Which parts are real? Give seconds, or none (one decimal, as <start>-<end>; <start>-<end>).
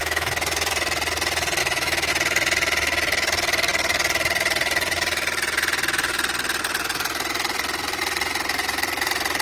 0.7-1.6; 2.1-9.4